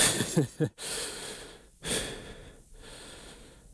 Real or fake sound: real